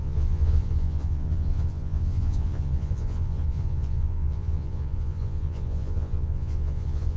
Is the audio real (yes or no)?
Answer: no